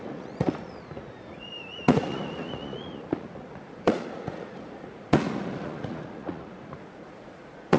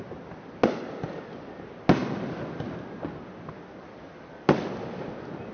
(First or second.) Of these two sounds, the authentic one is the second